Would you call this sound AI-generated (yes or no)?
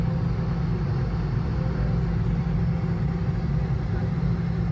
no